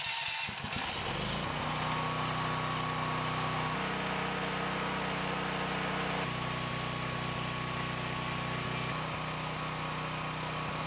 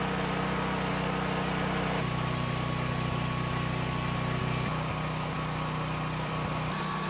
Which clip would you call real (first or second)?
first